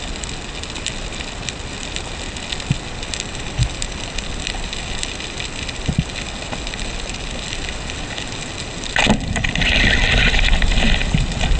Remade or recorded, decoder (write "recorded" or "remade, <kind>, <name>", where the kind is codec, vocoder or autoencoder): recorded